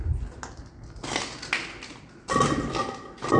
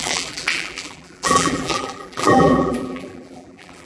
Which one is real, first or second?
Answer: first